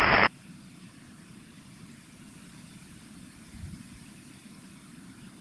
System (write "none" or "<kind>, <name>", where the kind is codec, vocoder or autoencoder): vocoder, BigVGAN v2